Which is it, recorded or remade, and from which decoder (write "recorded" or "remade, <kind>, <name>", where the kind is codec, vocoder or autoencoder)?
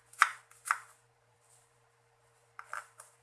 remade, vocoder, BigVGAN v2